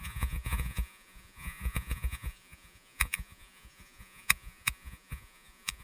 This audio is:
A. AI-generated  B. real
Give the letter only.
A